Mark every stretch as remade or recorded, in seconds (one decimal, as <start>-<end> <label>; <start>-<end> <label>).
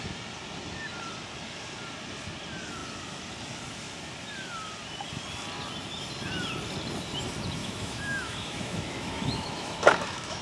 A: 0.0-7.6 recorded; 7.6-10.4 remade